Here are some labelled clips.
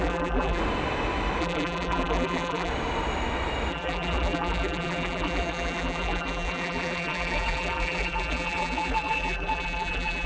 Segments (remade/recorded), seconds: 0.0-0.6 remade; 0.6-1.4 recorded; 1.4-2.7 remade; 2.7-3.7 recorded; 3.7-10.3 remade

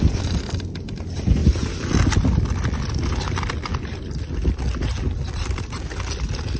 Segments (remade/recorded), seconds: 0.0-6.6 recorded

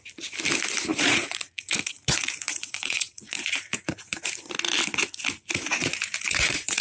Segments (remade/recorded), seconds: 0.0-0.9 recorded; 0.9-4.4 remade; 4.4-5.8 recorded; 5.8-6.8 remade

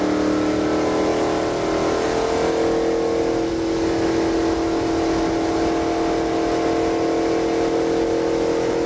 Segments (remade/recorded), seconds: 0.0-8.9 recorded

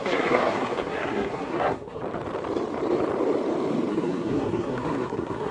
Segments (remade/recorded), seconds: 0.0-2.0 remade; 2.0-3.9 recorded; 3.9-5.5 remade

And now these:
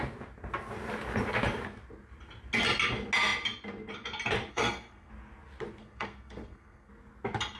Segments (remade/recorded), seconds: 0.0-4.5 recorded; 4.5-5.1 remade; 5.1-5.8 recorded; 5.8-6.9 remade; 6.9-7.6 recorded